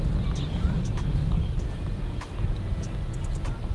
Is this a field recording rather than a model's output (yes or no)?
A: yes